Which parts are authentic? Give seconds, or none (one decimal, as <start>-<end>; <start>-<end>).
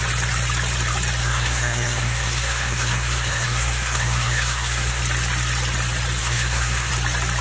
0.0-1.2; 5.0-6.2; 6.9-7.4